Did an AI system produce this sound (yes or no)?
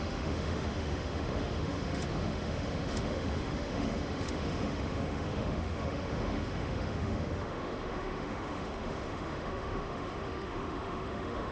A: yes